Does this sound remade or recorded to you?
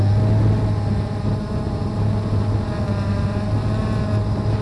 recorded